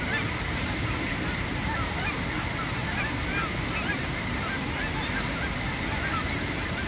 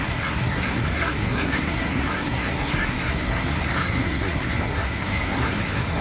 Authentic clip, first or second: first